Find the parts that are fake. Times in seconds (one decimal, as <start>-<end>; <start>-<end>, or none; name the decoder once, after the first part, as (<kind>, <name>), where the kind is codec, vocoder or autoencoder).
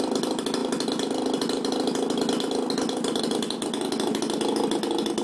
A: none